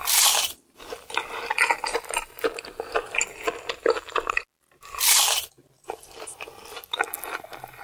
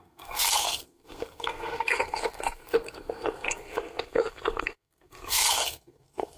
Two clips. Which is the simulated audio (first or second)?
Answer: second